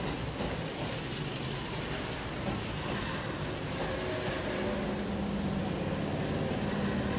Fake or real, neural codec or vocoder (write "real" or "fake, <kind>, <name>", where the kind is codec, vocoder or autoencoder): real